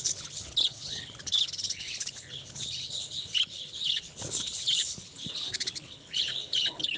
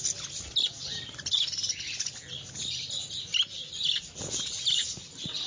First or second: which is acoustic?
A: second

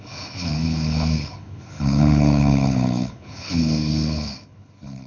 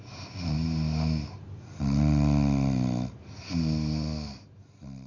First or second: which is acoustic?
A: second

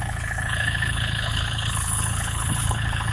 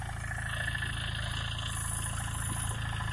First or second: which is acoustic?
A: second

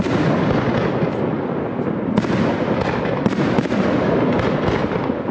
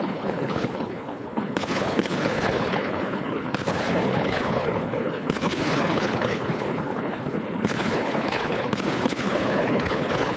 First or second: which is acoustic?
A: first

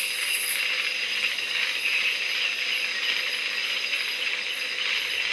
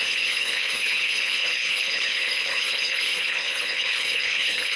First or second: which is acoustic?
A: first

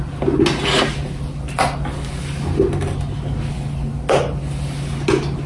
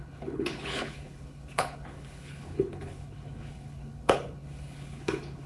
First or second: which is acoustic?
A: first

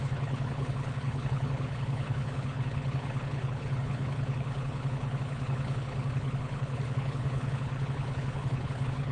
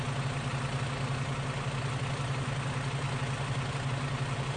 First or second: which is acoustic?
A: second